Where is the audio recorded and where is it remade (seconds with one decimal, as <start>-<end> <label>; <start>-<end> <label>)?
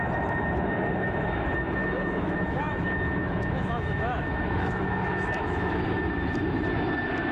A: 0.0-1.8 recorded; 1.8-6.2 remade; 6.2-7.3 recorded